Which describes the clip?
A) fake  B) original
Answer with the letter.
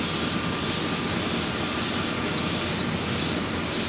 B